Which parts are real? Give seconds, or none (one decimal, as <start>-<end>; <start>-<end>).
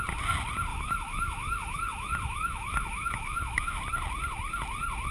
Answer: 0.0-0.7; 3.8-5.1